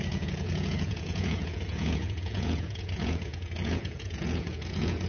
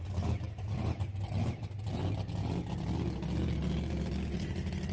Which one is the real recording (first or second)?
second